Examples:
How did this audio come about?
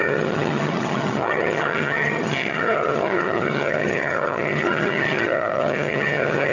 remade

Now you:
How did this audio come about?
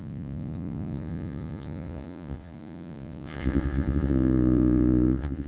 remade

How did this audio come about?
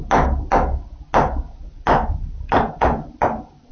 recorded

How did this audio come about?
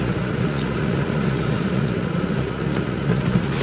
remade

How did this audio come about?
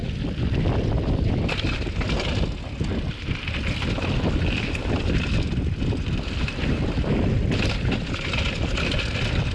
recorded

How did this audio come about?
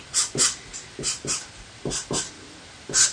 recorded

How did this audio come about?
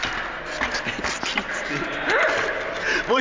recorded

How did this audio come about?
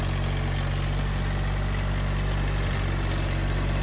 recorded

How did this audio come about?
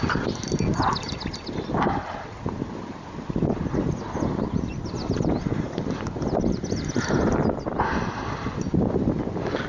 recorded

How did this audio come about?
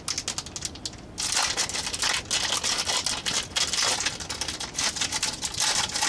recorded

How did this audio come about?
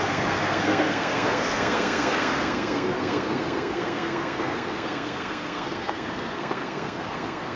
remade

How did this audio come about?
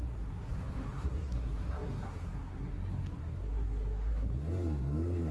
remade